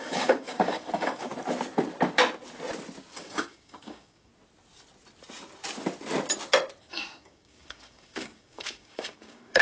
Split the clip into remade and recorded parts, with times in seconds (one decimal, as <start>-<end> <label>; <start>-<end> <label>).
0.0-1.3 remade; 1.3-3.1 recorded; 3.1-4.3 remade; 4.3-6.8 recorded; 6.8-9.6 remade